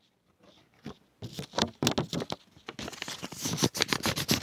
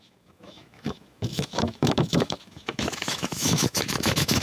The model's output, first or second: second